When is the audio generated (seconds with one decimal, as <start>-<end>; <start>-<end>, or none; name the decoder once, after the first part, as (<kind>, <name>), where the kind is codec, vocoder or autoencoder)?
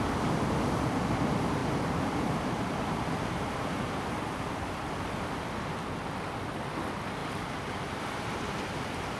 1.6-4.6 (vocoder, BigVGAN v2); 7.2-9.2